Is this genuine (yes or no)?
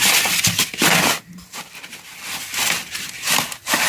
yes